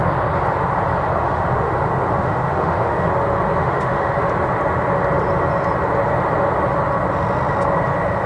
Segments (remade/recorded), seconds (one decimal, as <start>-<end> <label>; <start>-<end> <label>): 0.0-1.2 recorded; 1.2-3.1 remade; 3.1-3.6 recorded; 3.6-4.2 remade; 4.2-8.3 recorded